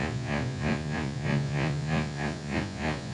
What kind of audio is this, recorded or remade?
remade